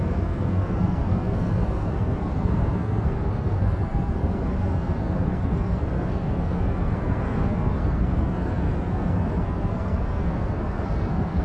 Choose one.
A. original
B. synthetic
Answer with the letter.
B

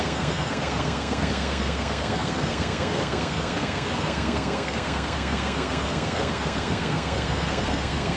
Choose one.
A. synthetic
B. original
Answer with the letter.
A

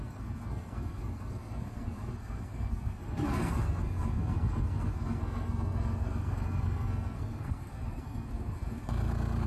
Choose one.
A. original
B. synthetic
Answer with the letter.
B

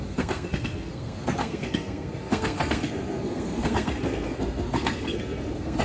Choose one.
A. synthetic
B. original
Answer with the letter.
A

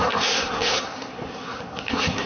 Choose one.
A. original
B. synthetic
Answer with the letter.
B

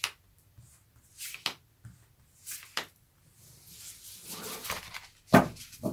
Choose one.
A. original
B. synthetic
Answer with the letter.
A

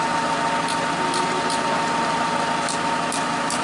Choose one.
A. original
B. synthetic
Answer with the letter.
A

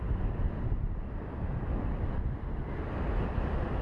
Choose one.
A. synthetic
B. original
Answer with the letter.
B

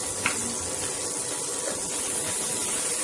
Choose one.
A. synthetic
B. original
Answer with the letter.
B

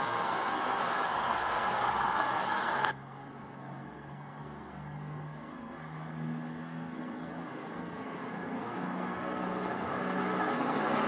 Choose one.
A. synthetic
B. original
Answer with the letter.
A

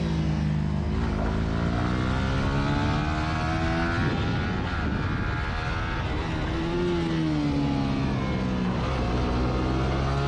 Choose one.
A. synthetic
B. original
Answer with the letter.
B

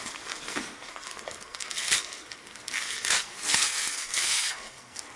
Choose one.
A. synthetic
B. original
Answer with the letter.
A